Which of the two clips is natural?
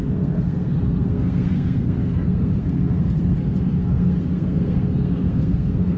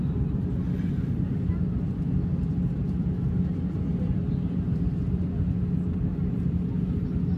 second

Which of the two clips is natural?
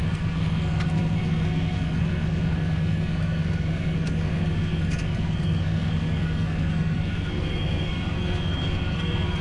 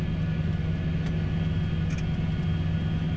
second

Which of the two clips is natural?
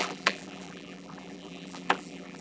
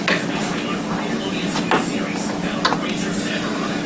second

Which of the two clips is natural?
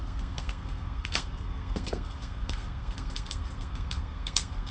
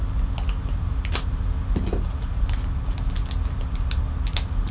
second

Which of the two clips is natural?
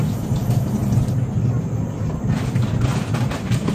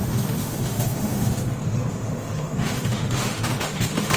first